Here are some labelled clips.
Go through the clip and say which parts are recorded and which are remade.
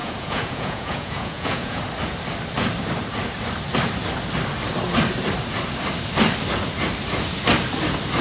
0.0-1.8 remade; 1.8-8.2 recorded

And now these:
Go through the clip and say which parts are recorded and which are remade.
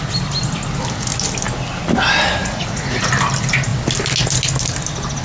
0.0-2.4 recorded; 2.4-3.1 remade; 3.1-5.2 recorded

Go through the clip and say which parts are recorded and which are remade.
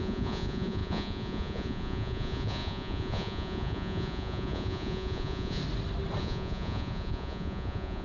0.0-5.6 remade; 5.6-6.2 recorded; 6.2-8.0 remade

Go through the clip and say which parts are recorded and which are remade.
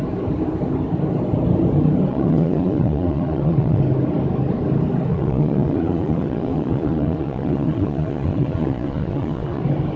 0.0-2.1 recorded; 2.1-3.8 remade; 3.8-5.1 recorded; 5.1-9.6 remade; 9.6-10.0 recorded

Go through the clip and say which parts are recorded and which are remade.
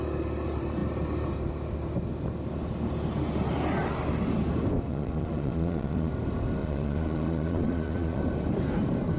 0.0-4.9 recorded; 4.9-6.1 remade; 6.1-6.6 recorded; 6.6-8.2 remade; 8.2-9.2 recorded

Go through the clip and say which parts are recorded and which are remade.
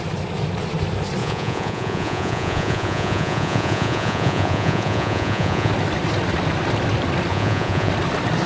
0.0-1.2 recorded; 1.2-5.7 remade; 5.7-7.3 recorded; 7.3-7.9 remade; 7.9-8.5 recorded